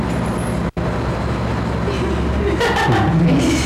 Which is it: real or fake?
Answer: real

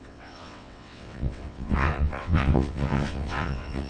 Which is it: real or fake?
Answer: fake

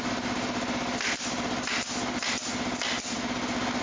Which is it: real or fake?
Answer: real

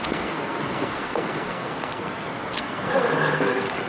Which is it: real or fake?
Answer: fake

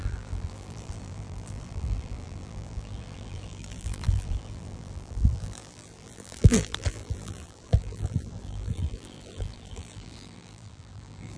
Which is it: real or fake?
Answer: fake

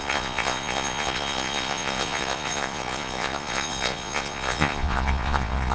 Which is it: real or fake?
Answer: fake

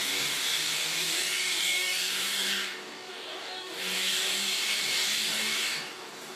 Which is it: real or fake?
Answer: fake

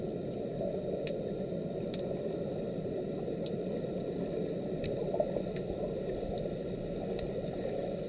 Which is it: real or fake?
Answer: real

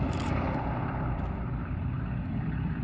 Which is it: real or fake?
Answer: real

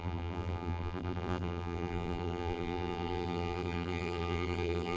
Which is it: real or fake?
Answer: fake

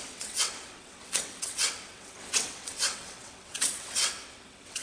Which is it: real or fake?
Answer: fake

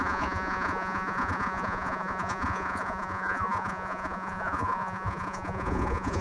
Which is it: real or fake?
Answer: fake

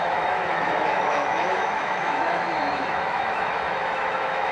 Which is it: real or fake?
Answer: fake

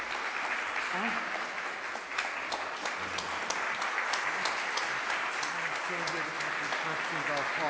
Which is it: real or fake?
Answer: real